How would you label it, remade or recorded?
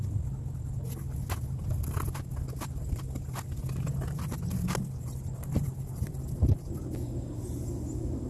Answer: recorded